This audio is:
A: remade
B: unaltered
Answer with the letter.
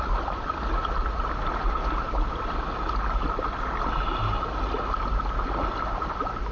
B